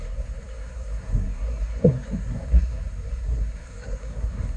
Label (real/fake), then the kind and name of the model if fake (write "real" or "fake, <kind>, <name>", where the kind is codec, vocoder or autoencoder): fake, codec, SNAC